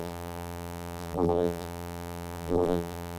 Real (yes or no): no